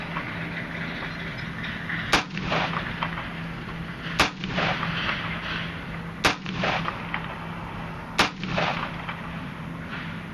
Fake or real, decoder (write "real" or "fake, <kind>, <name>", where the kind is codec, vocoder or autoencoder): real